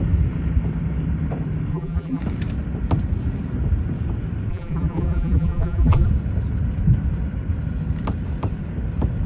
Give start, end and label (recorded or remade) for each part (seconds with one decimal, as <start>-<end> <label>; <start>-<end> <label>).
0.0-1.7 recorded; 1.7-2.2 remade; 2.2-4.5 recorded; 4.5-6.1 remade; 6.1-9.3 recorded